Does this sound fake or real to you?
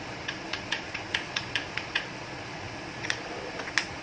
fake